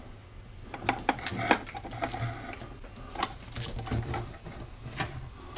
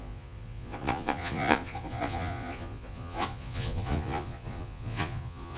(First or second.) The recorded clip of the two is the first